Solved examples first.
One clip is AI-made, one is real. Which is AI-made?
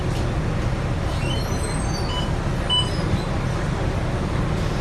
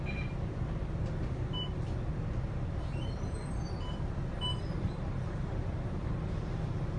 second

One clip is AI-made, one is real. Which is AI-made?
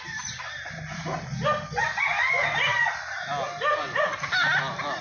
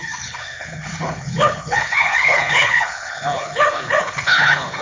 second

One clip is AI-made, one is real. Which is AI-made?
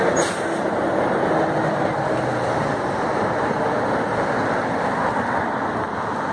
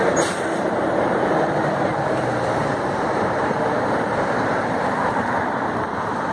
second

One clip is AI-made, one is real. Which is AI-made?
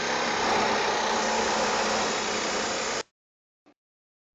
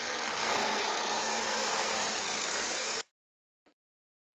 second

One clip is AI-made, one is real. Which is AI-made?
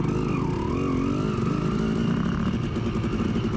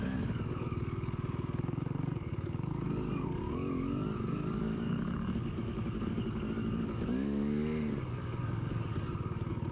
second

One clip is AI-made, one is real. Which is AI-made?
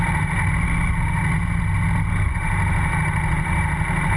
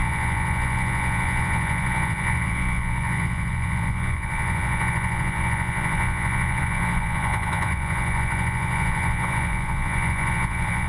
second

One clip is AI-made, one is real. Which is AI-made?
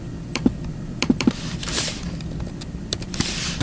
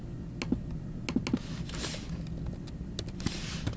first